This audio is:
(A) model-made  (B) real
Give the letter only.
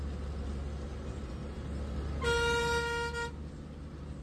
B